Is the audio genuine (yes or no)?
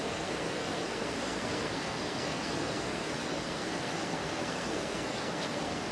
no